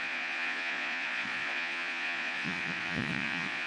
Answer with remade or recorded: remade